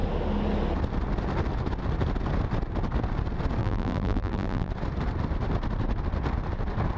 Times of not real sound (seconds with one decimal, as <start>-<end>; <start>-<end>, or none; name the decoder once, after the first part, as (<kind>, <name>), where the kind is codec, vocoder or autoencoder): 3.6-4.7 (vocoder, BigVGAN v2)